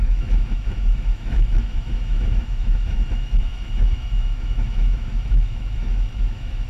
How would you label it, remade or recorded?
remade